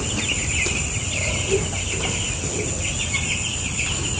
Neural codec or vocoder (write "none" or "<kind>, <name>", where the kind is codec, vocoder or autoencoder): none